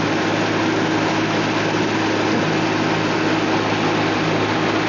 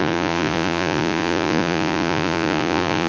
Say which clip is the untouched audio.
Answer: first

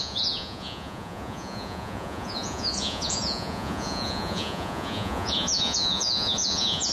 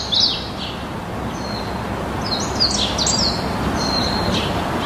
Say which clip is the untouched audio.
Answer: second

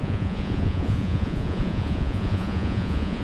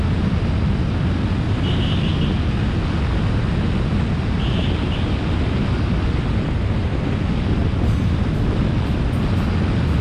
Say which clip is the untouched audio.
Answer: second